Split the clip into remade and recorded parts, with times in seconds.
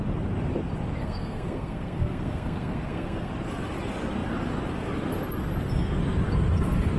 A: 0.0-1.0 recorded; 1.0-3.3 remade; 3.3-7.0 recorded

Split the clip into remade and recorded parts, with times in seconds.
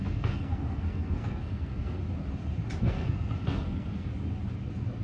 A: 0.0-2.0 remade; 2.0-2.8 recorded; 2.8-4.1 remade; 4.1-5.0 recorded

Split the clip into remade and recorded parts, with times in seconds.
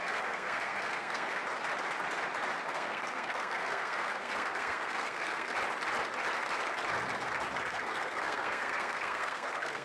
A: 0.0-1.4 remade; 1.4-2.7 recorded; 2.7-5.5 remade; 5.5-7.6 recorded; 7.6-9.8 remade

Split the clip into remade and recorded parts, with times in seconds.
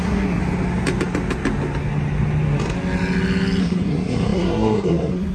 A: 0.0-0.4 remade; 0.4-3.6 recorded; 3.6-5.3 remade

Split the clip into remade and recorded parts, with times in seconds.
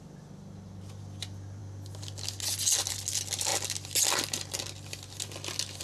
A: 0.0-5.8 recorded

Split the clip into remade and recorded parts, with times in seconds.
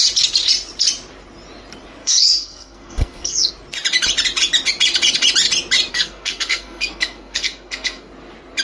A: 0.0-2.0 recorded; 2.0-3.5 remade; 3.5-5.9 recorded; 5.9-8.1 remade; 8.1-8.6 recorded